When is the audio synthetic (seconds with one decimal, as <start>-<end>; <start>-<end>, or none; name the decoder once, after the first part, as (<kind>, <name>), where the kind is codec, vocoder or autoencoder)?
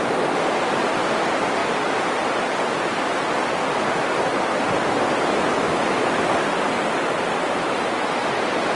none